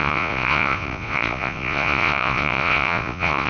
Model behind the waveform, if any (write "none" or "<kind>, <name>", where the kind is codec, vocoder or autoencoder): vocoder, Vocos